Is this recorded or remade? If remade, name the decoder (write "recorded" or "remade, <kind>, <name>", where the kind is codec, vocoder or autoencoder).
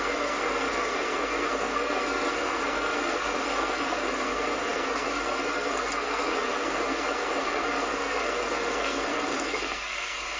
remade, codec, SNAC